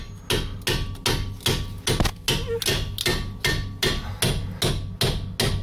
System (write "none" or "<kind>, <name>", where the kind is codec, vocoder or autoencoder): none